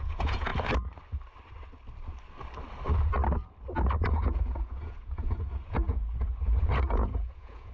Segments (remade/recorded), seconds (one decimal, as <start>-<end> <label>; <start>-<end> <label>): 0.0-0.5 remade; 0.5-4.1 recorded; 4.1-7.7 remade